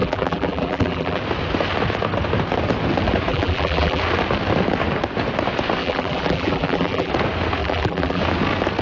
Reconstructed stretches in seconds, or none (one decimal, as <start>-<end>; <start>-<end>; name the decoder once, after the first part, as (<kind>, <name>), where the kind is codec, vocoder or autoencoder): 0.0-1.2 (vocoder, BigVGAN v2); 3.3-4.0; 5.8-7.1; 7.6-8.2